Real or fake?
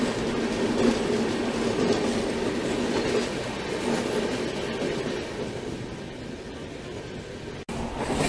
real